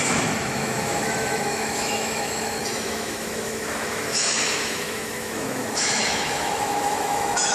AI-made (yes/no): yes